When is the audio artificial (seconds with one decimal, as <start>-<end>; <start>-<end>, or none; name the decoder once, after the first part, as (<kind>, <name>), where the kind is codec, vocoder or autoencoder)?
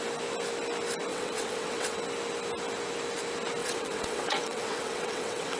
1.1-2.0 (vocoder, WaveNeXt); 3.6-5.6